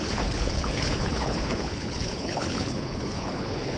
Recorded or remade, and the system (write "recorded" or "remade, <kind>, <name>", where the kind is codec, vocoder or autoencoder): remade, codec, HILCodec